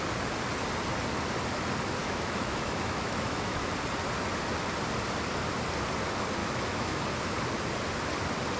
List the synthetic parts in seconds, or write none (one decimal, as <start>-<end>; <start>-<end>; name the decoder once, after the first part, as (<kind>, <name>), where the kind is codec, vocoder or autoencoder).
2.0-3.7 (autoencoder, DAC-VAE); 6.4-7.0